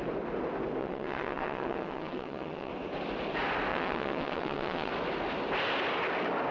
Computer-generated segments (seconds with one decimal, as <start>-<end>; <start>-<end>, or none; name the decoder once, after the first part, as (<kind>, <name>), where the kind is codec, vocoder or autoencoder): 0.8-2.7 (vocoder, WaveNeXt); 3.7-4.9